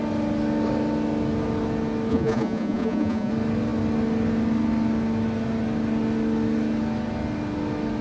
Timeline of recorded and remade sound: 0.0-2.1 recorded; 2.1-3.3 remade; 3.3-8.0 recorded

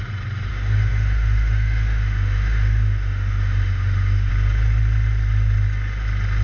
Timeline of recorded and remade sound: 0.0-0.5 recorded; 0.5-4.3 remade; 4.3-6.4 recorded

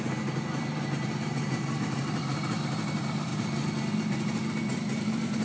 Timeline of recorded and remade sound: 0.0-5.4 recorded

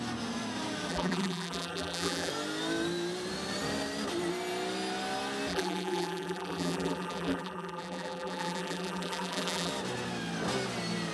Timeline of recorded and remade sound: 0.0-0.9 recorded; 0.9-2.3 remade; 2.3-5.5 recorded; 5.5-9.7 remade; 9.7-11.1 recorded

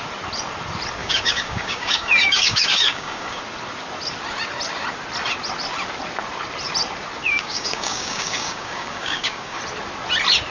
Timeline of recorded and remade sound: 0.0-1.0 recorded; 1.0-3.4 remade; 3.4-7.2 recorded; 7.2-9.6 remade; 9.6-10.5 recorded

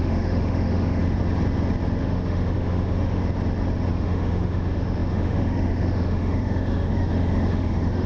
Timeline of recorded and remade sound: 0.0-1.0 remade; 1.0-2.0 recorded; 2.0-3.2 remade; 3.2-3.9 recorded; 3.9-8.1 remade

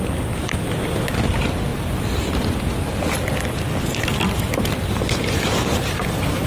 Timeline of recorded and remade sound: 0.0-6.5 recorded